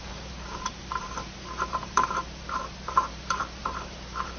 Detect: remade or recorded remade